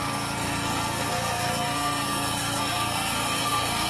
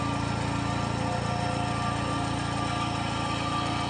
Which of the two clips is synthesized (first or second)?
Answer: first